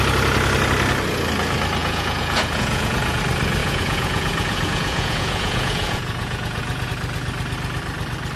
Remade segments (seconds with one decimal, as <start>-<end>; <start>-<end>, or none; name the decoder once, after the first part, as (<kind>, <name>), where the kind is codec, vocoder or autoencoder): 1.8-3.2 (vocoder, Vocos); 3.6-6.9